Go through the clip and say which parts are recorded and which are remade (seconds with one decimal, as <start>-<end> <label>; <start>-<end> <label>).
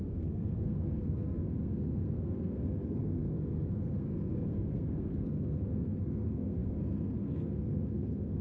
0.0-8.4 remade